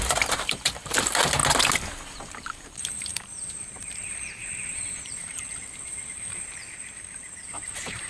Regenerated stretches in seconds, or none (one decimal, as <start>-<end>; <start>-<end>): 0.0-1.4; 2.4-8.1